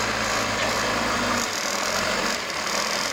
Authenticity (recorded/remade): recorded